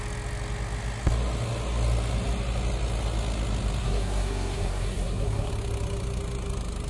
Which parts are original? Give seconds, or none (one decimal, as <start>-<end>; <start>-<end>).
0.0-3.8; 5.5-6.9